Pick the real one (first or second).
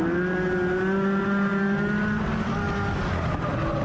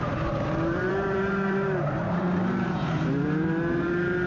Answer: first